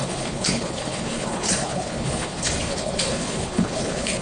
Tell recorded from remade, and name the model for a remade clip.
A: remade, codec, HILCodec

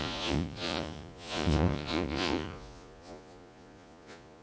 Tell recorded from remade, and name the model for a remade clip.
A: remade, vocoder, Vocos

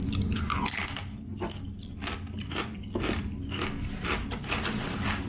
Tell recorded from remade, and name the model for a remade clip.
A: recorded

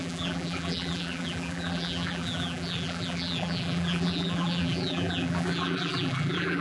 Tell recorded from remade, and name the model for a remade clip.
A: remade, vocoder, BigVGAN v2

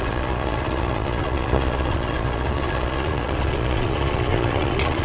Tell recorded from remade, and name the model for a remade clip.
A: remade, vocoder, Vocos